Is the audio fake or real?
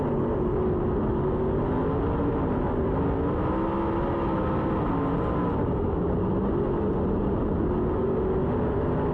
real